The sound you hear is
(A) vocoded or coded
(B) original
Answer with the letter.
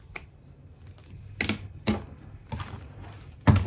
B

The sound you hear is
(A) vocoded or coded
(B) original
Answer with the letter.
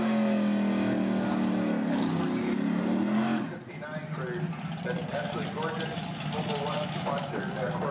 B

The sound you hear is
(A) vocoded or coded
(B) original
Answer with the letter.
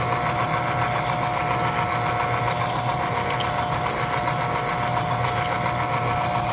B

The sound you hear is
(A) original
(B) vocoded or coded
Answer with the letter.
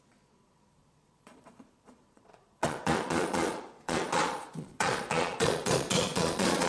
B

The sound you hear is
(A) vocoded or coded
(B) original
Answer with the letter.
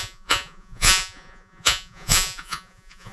A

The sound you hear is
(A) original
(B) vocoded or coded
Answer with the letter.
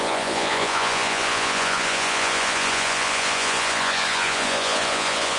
B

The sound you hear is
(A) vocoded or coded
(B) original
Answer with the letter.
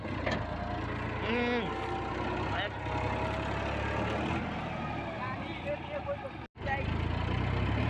B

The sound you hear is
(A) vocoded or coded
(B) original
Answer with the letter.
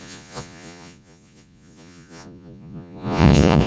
A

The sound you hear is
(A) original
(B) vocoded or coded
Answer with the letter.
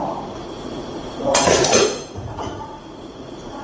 B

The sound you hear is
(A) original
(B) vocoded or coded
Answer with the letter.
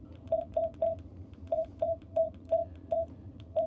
B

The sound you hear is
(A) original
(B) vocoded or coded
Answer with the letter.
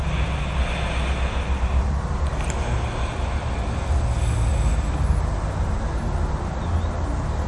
A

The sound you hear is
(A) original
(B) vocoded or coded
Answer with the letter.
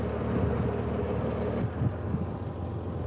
A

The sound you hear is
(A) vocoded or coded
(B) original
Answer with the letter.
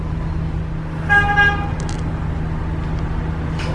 B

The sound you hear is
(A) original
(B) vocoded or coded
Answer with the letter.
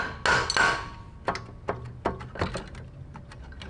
A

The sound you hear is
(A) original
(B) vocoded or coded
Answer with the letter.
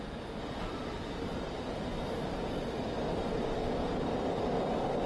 A